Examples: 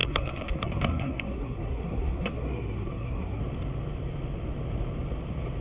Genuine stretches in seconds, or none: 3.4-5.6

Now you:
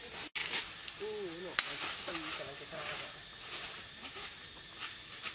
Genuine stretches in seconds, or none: 0.0-5.3

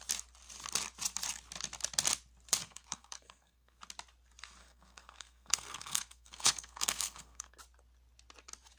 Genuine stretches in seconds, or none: 0.0-2.6; 3.8-4.6; 7.6-8.8

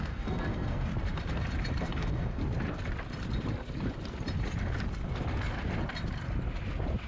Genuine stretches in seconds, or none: 0.9-1.8; 2.4-7.1

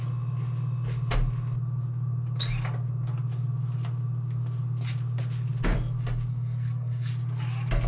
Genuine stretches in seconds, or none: 0.0-6.3; 7.1-7.9

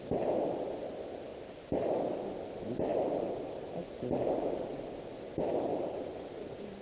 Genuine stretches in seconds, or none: 0.0-6.8

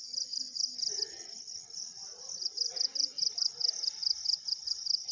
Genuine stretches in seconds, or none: 0.0-5.1

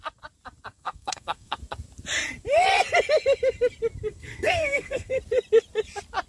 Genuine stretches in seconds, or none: 0.0-0.7; 1.6-4.1; 5.2-6.3